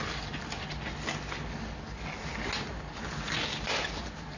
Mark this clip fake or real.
real